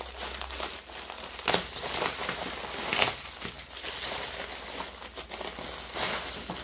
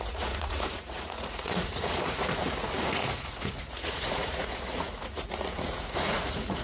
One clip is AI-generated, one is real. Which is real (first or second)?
first